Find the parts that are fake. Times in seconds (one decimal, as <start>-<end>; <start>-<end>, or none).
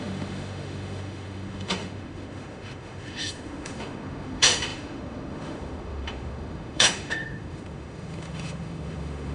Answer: 0.0-9.3